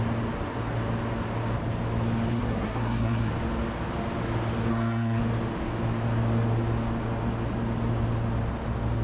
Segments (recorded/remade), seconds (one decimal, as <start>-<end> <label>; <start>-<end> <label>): 0.0-2.3 recorded; 2.3-3.3 remade; 3.3-4.7 recorded; 4.7-5.2 remade; 5.2-9.0 recorded